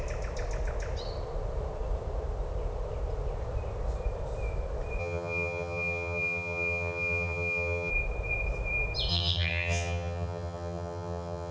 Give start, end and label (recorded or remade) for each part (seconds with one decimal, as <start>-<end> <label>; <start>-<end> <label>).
0.0-5.0 recorded; 5.0-7.9 remade; 7.9-9.1 recorded; 9.1-11.5 remade